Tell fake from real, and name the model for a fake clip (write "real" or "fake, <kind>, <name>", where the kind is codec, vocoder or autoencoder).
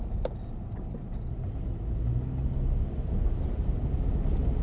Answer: real